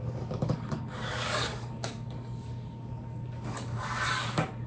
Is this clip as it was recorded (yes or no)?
no